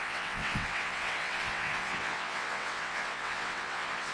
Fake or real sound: fake